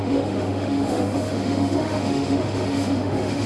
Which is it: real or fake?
fake